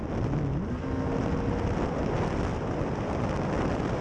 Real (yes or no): yes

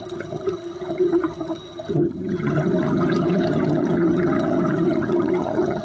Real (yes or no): no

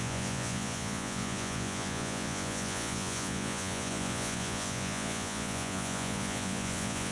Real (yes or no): no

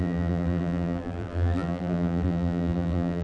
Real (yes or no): no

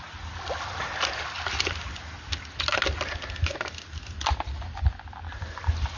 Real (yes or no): yes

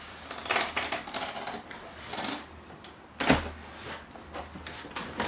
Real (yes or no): yes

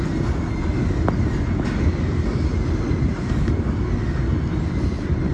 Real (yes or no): yes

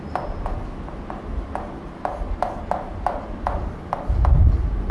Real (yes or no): yes